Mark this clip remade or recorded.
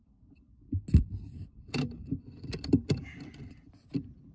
recorded